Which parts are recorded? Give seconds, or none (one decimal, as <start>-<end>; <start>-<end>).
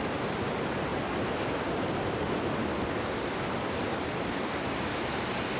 0.0-5.6